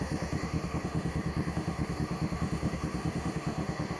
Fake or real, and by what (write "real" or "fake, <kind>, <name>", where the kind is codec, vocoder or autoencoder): fake, autoencoder, DAC-VAE